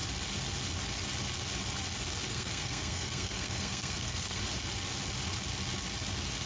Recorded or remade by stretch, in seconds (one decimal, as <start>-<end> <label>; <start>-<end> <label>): 0.0-2.3 recorded; 2.3-4.4 remade; 4.4-6.5 recorded